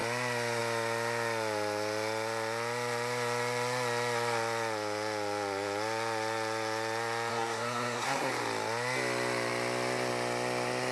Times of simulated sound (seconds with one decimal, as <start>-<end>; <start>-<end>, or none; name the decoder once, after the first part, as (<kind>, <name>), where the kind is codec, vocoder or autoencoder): 7.3-8.3 (codec, SNAC)